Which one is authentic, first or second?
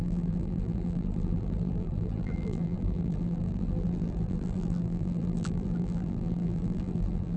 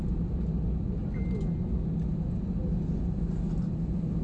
second